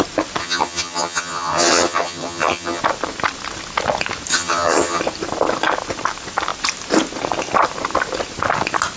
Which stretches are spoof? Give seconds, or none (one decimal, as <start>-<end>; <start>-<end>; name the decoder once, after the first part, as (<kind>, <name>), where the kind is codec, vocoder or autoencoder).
0.4-2.8 (vocoder, HiFi-GAN); 4.3-5.0